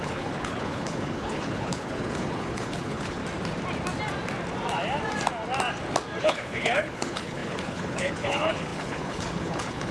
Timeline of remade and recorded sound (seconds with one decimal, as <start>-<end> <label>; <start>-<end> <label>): 0.0-3.2 remade; 3.2-6.2 recorded; 6.2-9.9 remade